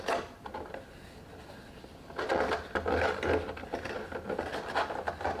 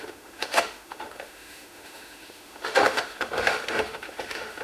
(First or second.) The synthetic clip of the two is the second